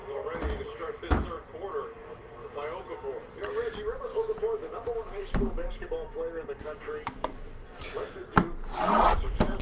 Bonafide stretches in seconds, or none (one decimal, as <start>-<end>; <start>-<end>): 0.0-4.1; 5.7-9.6

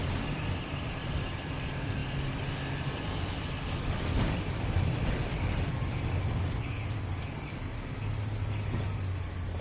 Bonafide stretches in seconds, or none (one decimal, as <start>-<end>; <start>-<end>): 0.0-9.6

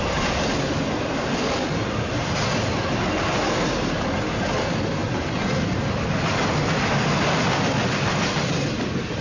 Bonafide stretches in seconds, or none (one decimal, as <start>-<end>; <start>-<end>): 0.0-9.2

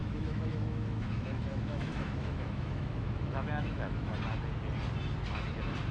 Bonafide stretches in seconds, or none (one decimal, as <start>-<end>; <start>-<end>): 4.1-5.9